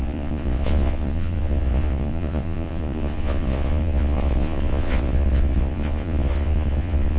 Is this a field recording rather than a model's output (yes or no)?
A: no